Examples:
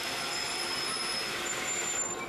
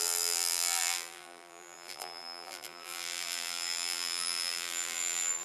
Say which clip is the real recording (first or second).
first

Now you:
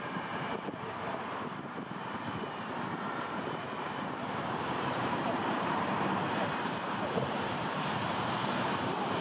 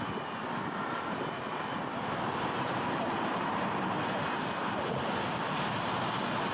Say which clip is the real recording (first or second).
second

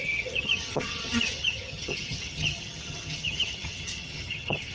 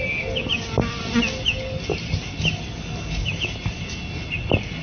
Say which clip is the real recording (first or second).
second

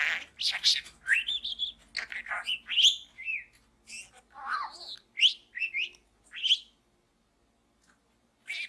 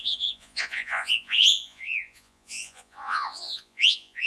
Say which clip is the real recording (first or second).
first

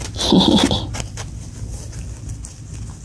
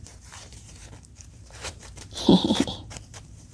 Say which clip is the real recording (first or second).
first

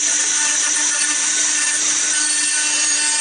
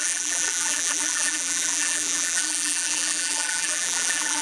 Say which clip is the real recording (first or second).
first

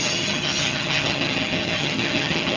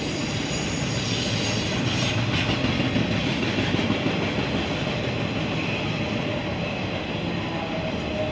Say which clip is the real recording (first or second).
second